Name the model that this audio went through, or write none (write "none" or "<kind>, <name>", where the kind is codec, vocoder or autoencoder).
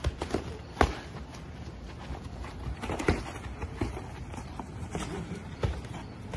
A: none